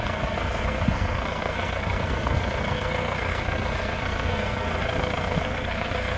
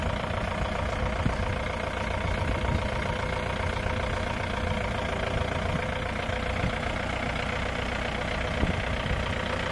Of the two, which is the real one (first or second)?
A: second